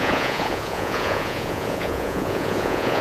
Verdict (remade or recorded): remade